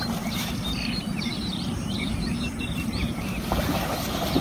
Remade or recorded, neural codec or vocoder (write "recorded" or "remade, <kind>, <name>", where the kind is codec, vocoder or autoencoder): remade, vocoder, BigVGAN v2